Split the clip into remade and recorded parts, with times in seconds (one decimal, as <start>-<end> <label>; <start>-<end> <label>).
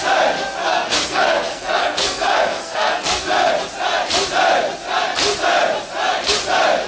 0.0-0.6 recorded; 0.6-3.5 remade; 3.5-6.9 recorded